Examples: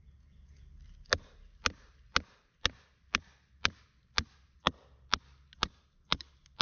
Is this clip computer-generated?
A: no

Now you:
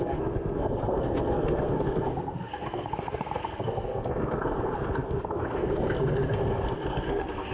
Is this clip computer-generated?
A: yes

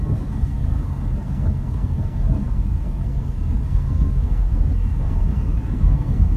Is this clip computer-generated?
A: yes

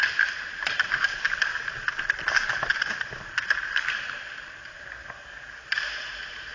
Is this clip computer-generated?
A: no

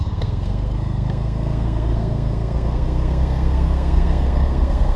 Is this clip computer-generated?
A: yes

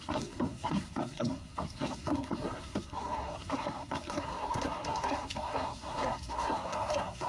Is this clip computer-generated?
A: yes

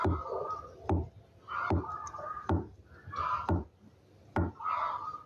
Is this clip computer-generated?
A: no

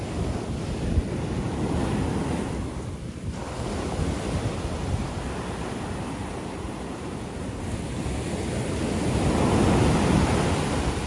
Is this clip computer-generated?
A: no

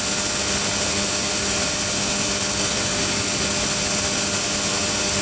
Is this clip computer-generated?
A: no